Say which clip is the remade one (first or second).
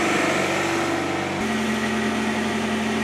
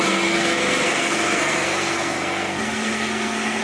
second